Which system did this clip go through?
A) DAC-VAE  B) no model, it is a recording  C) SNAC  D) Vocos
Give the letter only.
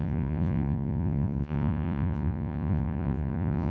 D